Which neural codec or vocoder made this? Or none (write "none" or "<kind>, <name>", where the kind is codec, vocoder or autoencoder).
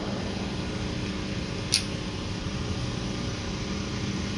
none